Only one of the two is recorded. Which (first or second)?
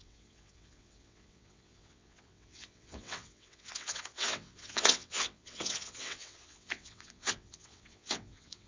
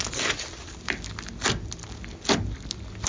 second